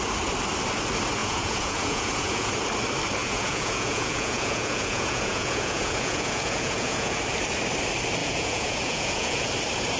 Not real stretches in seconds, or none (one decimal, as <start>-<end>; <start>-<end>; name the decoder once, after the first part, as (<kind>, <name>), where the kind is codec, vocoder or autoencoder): 1.2-2.5 (vocoder, Vocos); 3.2-7.2; 8.2-9.5